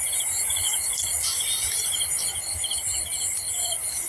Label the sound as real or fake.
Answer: fake